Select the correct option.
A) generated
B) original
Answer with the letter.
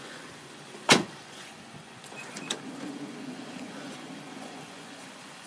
A